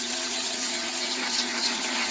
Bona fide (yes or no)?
no